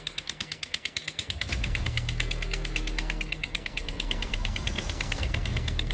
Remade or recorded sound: remade